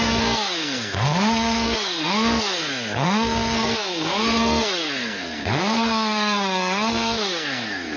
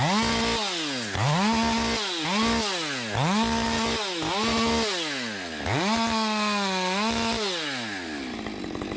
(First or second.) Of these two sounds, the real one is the second